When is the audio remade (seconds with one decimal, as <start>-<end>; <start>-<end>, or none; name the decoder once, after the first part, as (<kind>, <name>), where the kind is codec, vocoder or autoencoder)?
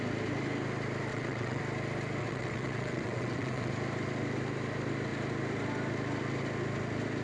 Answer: 1.1-1.6 (vocoder, WaveNeXt); 2.2-3.7